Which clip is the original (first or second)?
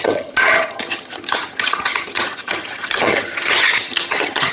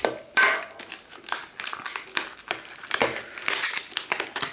second